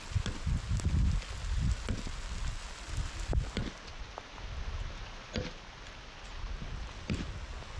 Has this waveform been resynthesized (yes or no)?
no